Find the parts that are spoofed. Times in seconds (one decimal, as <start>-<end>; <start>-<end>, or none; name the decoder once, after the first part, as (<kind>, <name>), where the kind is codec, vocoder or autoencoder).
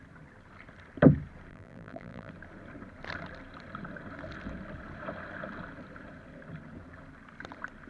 1.5-2.3 (vocoder, BigVGAN v2)